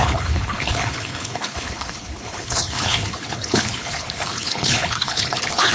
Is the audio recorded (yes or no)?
no